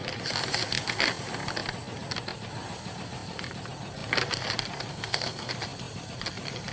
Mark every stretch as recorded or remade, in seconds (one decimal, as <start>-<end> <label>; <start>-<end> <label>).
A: 0.0-4.9 recorded; 4.9-5.5 remade; 5.5-6.7 recorded